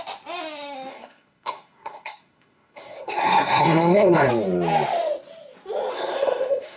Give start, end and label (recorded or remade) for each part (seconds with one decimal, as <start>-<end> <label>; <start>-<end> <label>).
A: 0.0-0.9 recorded; 0.9-4.3 remade; 4.3-5.9 recorded; 5.9-6.8 remade